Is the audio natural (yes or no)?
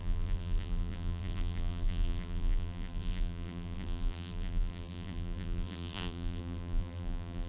no